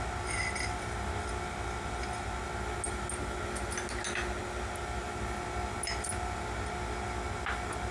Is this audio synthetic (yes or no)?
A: no